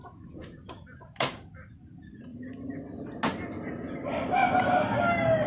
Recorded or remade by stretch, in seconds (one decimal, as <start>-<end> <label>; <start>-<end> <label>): 0.0-5.5 recorded